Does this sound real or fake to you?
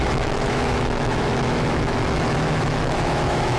fake